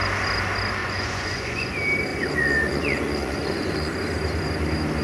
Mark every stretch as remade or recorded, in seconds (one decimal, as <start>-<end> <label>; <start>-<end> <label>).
0.0-0.8 recorded; 0.8-1.7 remade; 1.7-2.1 recorded; 2.1-3.9 remade; 3.9-5.0 recorded